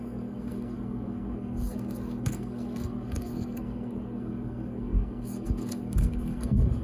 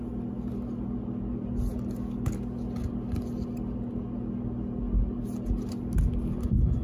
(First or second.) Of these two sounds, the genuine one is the second